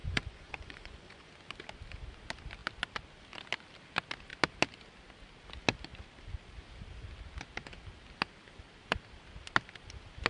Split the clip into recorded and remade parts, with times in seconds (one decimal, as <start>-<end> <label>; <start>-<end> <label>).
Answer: 0.0-1.3 remade; 1.3-10.3 recorded